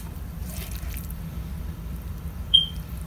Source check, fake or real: fake